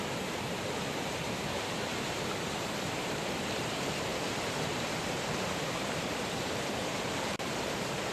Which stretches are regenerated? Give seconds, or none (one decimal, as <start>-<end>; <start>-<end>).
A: 0.0-1.9; 2.4-8.1